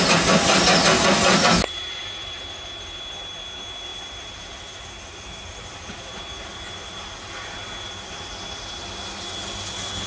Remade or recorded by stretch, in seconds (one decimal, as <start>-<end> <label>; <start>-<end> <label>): 0.0-10.1 recorded